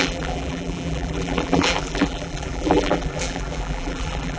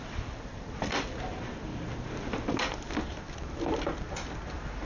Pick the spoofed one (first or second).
first